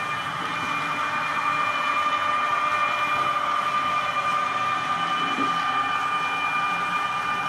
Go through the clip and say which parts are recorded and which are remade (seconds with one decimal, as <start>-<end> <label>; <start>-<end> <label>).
0.0-7.5 recorded